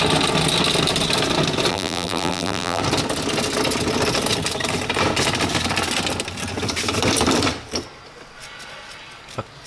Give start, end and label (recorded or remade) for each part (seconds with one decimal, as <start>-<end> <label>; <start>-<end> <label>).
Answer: 0.0-1.7 recorded; 1.7-2.8 remade; 2.8-9.7 recorded